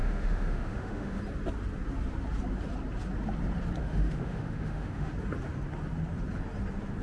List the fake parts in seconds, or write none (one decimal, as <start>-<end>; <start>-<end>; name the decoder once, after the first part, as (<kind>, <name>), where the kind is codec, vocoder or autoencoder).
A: 0.0-1.2 (autoencoder, DAC-VAE); 3.8-5.1